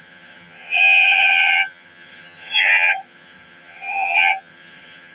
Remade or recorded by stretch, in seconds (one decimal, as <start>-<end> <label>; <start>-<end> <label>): 0.0-5.1 remade